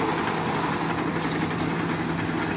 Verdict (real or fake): real